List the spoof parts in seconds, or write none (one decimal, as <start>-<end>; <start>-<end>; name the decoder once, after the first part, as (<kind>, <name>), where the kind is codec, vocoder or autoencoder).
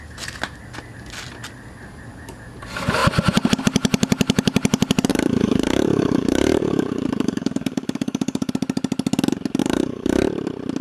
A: 5.1-8.5 (codec, DAC); 9.6-10.2